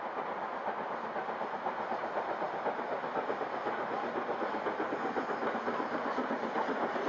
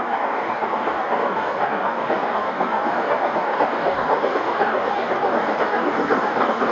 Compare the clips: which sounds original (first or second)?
first